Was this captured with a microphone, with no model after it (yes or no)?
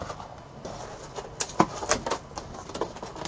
yes